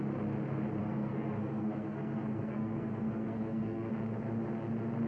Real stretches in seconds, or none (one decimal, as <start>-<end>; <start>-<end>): 0.0-0.8; 3.9-5.1